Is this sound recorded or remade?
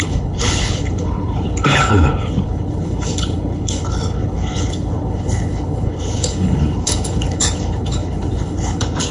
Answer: remade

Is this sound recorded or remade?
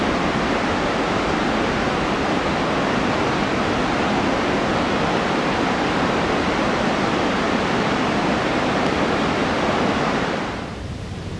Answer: recorded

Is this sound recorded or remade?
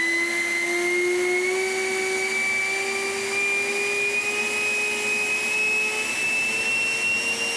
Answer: recorded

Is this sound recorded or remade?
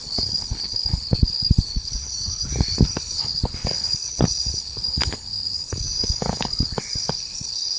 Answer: remade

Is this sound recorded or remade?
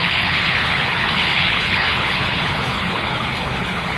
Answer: remade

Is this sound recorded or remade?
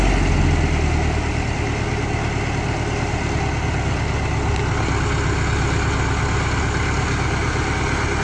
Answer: recorded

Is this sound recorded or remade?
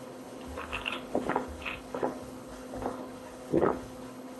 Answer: remade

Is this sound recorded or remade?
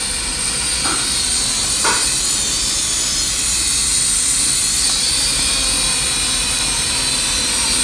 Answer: recorded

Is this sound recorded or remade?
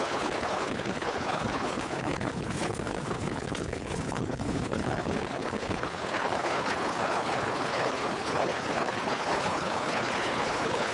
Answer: remade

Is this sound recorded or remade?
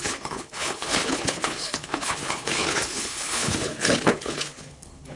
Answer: remade